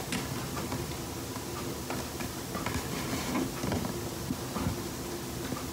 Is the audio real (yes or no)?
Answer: yes